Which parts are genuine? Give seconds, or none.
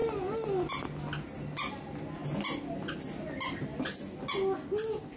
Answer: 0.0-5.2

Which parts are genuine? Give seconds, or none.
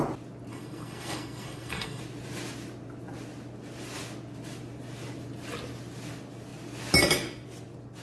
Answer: 0.0-0.5; 2.0-8.0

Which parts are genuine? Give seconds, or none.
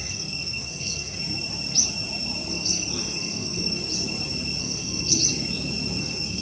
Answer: 1.2-2.5; 3.8-4.6; 5.2-6.0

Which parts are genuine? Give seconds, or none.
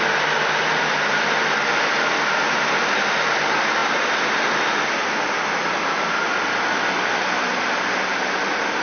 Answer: 0.0-8.8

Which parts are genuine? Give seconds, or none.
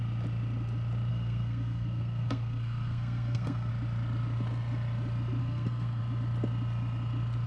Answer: 0.0-1.1; 3.7-5.4; 6.0-7.5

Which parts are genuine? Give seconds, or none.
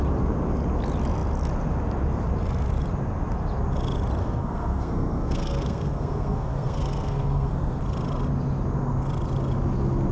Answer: 0.0-4.2; 7.8-10.1